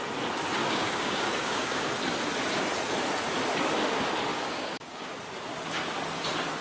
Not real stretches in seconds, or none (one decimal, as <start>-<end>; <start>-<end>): 0.6-1.9; 4.3-5.1